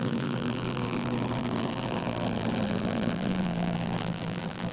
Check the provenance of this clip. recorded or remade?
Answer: remade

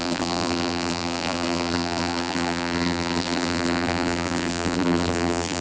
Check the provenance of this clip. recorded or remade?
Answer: remade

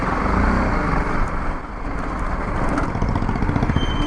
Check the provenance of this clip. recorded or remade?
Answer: recorded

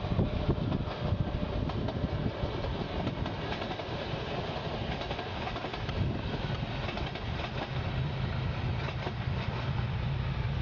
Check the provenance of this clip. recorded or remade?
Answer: recorded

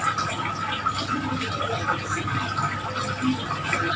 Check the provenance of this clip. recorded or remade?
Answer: recorded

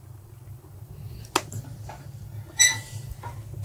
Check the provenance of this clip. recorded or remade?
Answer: recorded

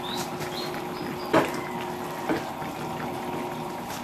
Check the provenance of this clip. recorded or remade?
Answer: recorded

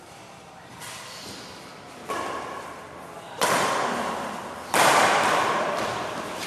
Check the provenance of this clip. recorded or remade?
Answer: recorded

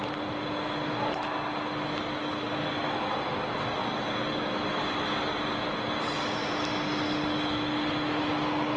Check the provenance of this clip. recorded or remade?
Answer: recorded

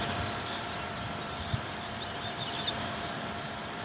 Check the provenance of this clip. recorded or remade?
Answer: remade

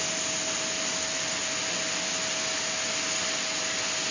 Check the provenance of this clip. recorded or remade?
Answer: recorded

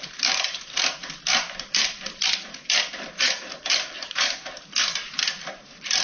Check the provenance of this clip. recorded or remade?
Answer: remade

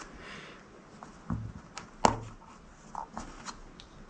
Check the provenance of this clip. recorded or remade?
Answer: recorded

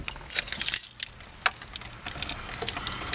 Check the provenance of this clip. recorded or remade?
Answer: recorded